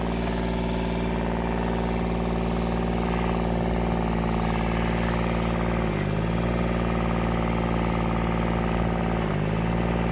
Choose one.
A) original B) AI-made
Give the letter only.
A